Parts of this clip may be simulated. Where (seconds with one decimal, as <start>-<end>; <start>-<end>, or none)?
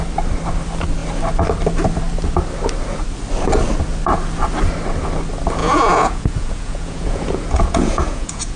5.6-8.6